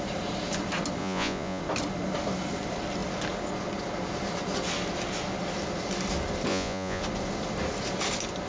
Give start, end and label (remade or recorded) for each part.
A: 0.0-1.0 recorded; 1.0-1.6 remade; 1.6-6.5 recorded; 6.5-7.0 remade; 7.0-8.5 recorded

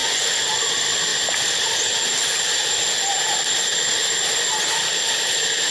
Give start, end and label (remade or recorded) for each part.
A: 0.0-0.7 remade; 0.7-5.7 recorded

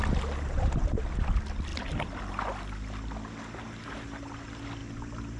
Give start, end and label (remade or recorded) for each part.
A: 0.0-5.4 recorded

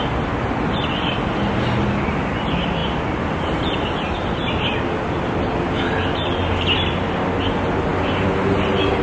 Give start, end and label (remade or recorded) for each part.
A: 0.0-9.0 recorded

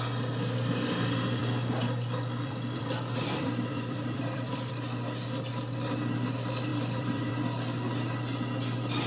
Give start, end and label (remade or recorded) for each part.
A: 0.0-1.4 recorded; 1.4-4.7 remade; 4.7-6.7 recorded; 6.7-7.3 remade; 7.3-9.1 recorded

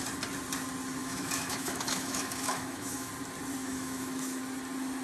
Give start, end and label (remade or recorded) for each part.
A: 0.0-1.0 recorded; 1.0-3.1 remade; 3.1-3.6 recorded; 3.6-4.4 remade; 4.4-5.0 recorded